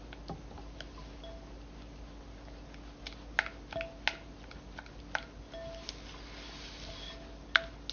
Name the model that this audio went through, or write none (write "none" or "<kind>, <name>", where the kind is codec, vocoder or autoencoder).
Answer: none